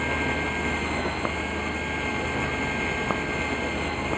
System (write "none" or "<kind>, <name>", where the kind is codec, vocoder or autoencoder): none